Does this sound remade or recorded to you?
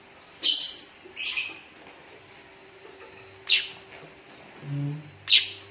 recorded